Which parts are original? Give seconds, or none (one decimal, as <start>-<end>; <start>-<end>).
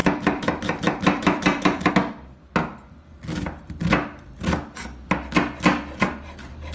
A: 1.9-6.7